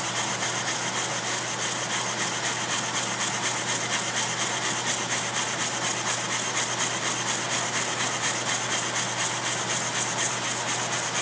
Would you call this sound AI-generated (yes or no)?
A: no